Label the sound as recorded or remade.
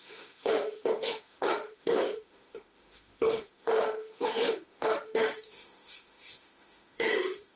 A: remade